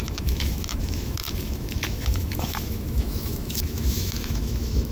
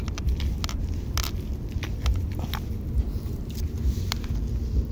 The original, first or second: second